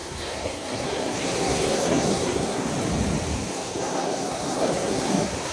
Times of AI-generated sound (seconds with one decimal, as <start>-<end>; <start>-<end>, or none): 0.0-2.7; 3.5-5.5